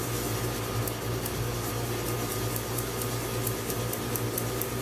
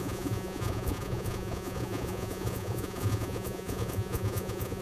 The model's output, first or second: second